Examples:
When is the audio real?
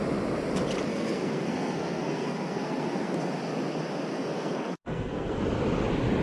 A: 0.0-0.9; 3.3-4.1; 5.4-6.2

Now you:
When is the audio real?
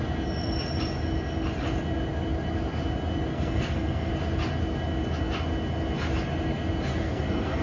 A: 0.0-3.3; 4.1-6.9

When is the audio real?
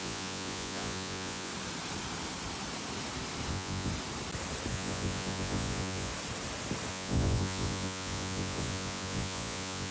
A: 1.5-3.5; 3.9-4.7; 6.1-6.9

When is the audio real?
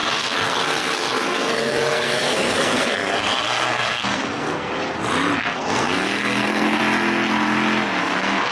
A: 4.7-5.4; 6.8-8.0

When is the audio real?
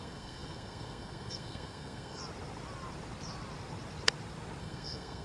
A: 2.2-4.6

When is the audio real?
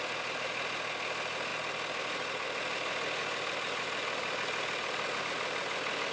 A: 0.0-6.1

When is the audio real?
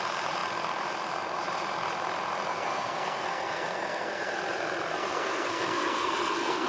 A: 0.0-2.5; 4.4-4.9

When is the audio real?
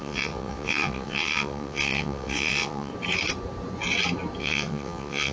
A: 2.9-4.4